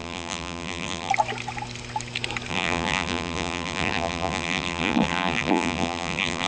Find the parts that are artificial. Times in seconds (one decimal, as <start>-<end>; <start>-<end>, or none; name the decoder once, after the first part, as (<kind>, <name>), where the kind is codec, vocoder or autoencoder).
0.0-1.1 (vocoder, BigVGAN v2); 2.5-6.5